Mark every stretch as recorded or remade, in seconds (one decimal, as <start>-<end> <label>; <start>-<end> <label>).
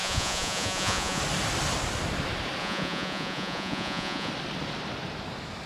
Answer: 0.0-1.2 remade; 1.2-2.6 recorded; 2.6-4.3 remade; 4.3-5.7 recorded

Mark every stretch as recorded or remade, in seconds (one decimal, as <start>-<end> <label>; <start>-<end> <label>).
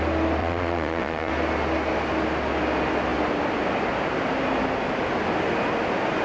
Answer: 0.0-0.4 recorded; 0.4-1.3 remade; 1.3-6.2 recorded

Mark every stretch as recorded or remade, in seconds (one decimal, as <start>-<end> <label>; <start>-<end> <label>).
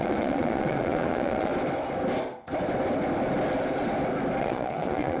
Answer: 0.0-1.5 remade; 1.5-4.4 recorded; 4.4-5.2 remade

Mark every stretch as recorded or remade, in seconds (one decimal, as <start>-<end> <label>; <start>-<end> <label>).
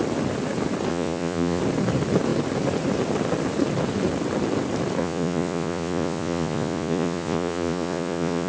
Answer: 0.0-0.9 recorded; 0.9-1.6 remade; 1.6-5.0 recorded; 5.0-8.5 remade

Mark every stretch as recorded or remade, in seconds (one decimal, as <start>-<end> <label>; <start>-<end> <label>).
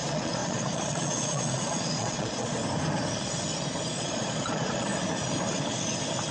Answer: 0.0-2.6 remade; 2.6-3.9 recorded; 3.9-4.9 remade; 4.9-6.3 recorded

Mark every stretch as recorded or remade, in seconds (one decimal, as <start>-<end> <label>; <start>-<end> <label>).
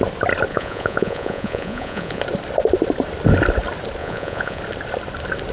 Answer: 0.0-0.5 recorded; 0.5-2.2 remade; 2.2-4.0 recorded; 4.0-4.6 remade; 4.6-5.5 recorded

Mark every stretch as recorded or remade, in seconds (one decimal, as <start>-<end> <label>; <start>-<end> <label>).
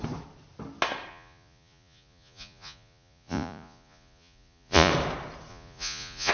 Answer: 0.0-1.1 recorded; 1.1-4.9 remade; 4.9-5.5 recorded; 5.5-6.3 remade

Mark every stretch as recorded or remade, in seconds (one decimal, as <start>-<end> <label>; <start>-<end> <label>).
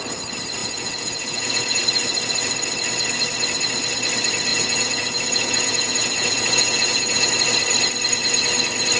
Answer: 0.0-0.6 recorded; 0.6-1.8 remade; 1.8-4.5 recorded; 4.5-7.3 remade; 7.3-9.0 recorded